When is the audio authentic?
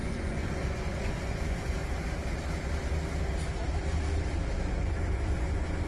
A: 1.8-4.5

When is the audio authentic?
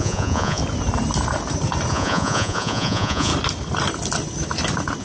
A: 0.6-1.9; 3.3-5.0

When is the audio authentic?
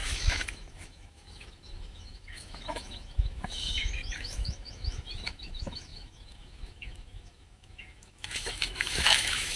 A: none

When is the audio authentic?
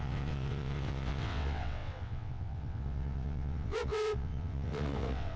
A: none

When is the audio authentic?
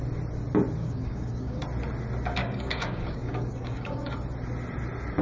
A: 0.0-0.8; 1.6-2.4; 4.1-5.2